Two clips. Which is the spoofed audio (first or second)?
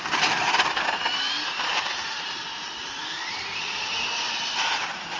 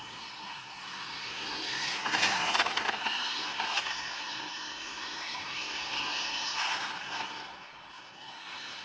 second